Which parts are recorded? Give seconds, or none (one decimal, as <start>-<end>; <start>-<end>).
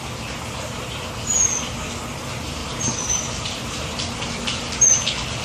0.0-2.6; 4.6-5.4